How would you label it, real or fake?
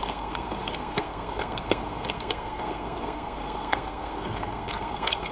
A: fake